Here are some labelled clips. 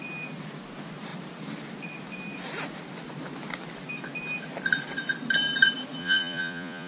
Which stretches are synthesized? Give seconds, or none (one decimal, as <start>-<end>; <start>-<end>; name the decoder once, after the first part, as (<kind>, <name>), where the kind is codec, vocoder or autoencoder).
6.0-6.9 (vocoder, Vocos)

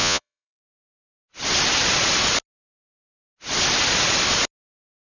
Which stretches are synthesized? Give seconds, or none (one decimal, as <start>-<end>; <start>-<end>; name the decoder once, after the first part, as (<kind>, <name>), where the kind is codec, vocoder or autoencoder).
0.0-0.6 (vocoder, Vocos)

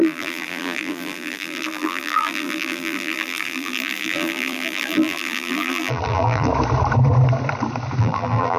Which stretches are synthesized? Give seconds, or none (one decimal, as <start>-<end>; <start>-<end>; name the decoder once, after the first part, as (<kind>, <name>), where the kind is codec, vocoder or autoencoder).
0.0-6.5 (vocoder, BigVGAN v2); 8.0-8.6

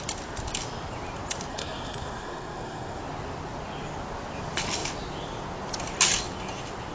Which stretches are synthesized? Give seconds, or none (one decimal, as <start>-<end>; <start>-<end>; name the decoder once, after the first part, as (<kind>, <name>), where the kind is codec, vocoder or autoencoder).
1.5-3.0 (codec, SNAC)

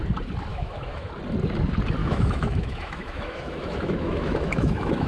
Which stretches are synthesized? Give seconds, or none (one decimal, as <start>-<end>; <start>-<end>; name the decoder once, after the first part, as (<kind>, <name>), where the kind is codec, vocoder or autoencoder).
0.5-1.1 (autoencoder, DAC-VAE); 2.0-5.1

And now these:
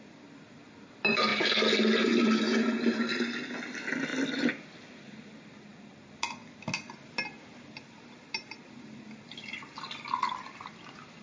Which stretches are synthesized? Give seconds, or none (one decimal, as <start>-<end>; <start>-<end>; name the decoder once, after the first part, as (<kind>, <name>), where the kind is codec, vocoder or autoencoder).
none

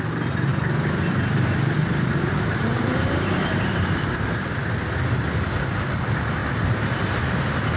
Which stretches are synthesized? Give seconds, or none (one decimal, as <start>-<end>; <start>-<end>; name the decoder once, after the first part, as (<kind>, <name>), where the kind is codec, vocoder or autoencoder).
0.5-4.6 (vocoder, BigVGAN v2); 6.4-7.2